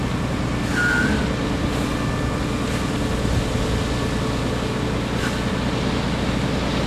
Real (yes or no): yes